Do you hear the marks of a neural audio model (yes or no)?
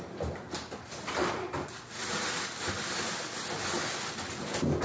no